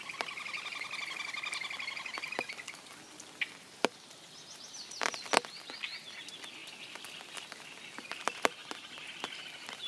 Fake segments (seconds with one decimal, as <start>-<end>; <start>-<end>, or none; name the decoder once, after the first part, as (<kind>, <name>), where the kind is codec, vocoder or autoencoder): 8.6-9.9 (vocoder, BigVGAN v2)